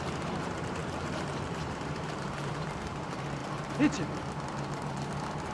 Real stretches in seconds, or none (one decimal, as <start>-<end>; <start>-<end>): 0.8-1.3; 3.4-4.9